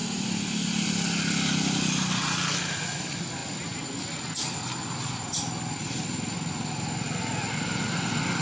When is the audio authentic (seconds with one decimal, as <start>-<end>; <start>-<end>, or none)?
0.9-8.4